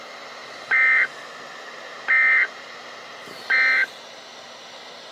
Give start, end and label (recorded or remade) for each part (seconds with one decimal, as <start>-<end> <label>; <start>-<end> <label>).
0.0-5.1 recorded